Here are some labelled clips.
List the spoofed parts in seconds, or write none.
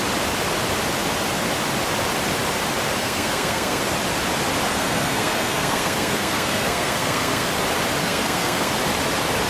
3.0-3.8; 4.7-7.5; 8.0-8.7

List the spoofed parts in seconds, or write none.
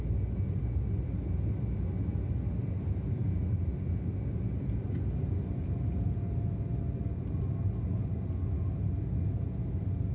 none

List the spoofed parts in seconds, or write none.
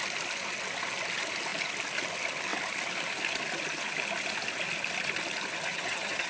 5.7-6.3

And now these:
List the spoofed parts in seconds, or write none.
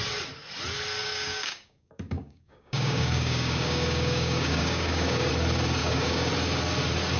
1.0-5.3; 5.8-6.3